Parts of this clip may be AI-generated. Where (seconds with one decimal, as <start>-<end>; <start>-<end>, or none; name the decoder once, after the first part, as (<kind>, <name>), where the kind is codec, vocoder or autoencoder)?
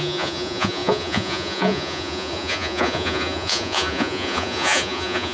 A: 0.0-5.3 (vocoder, Vocos)